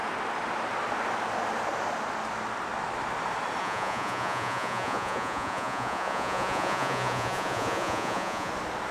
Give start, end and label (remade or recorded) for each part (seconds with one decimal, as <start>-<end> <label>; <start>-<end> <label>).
0.0-3.6 recorded; 3.6-8.5 remade; 8.5-8.9 recorded